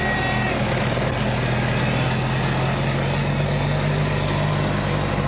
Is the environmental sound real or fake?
real